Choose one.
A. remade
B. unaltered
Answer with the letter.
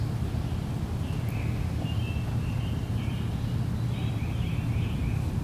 B